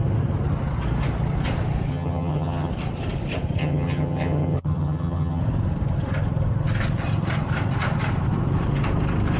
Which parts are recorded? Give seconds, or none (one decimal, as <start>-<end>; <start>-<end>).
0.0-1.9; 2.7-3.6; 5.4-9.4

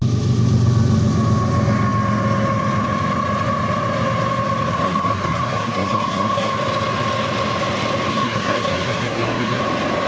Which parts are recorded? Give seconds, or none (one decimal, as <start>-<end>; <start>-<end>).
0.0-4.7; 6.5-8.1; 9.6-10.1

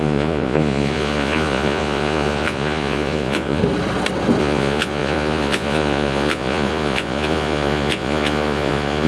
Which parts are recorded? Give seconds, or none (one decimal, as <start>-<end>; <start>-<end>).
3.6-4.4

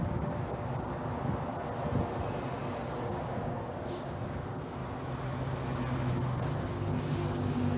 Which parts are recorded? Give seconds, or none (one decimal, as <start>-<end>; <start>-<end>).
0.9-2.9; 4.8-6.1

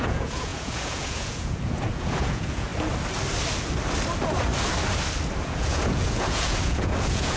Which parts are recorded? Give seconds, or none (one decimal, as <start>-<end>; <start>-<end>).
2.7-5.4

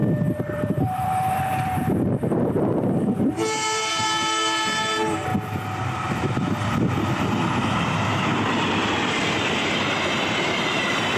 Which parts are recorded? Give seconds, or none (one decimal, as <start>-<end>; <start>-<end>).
5.3-7.8; 8.3-9.8

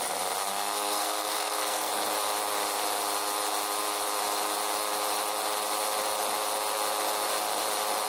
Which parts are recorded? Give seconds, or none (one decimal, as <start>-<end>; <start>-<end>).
0.0-0.5; 1.9-8.1